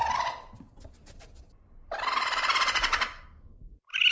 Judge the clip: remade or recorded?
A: recorded